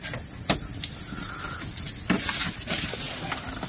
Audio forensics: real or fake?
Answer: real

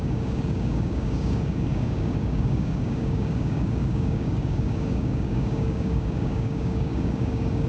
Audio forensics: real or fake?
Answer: fake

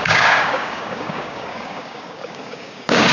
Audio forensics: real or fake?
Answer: fake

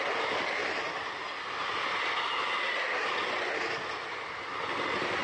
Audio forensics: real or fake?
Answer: real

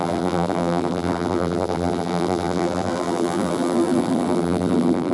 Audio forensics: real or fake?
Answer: fake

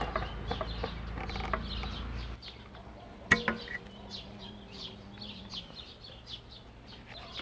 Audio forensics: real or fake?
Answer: real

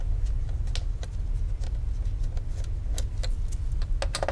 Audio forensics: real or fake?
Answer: real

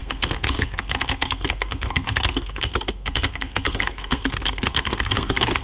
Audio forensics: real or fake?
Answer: fake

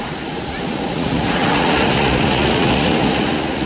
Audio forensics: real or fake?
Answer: fake